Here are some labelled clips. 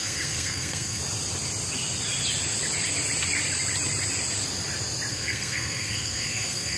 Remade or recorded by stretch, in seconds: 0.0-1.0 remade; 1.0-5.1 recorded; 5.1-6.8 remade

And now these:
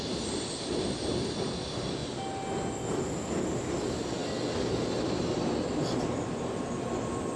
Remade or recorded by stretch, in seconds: 0.0-7.4 recorded

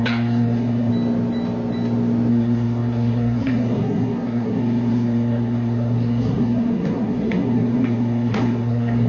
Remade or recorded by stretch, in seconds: 0.0-0.9 remade; 0.9-2.3 recorded; 2.3-9.1 remade